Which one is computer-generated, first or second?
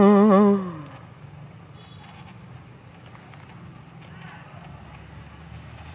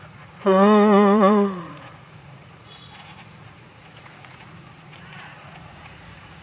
second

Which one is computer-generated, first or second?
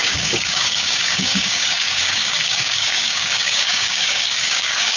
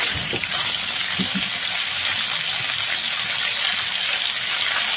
first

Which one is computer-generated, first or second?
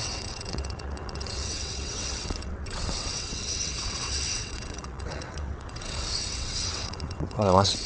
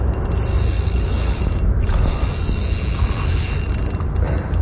first